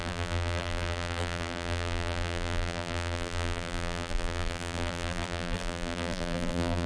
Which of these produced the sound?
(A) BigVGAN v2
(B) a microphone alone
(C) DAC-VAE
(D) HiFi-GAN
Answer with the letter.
A